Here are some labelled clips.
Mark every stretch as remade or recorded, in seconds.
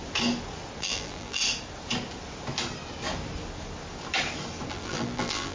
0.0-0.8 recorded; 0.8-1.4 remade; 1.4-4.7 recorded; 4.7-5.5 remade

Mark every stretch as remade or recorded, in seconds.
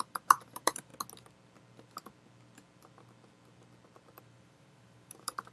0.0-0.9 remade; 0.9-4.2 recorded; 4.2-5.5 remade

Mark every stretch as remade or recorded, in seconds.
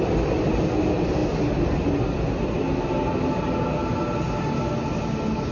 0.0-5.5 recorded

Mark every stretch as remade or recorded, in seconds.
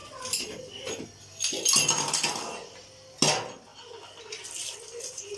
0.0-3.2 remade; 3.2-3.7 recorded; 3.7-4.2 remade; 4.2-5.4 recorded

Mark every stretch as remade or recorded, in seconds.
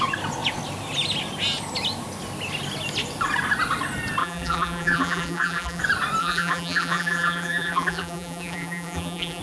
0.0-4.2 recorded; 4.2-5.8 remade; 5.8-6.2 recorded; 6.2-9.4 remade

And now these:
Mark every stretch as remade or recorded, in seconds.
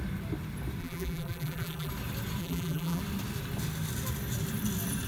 0.0-0.8 recorded; 0.8-1.9 remade; 1.9-2.4 recorded; 2.4-3.0 remade; 3.0-5.1 recorded